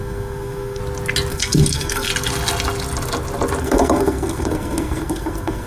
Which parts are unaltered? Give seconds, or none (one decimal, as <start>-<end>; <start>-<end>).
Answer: 0.8-1.3; 2.1-3.6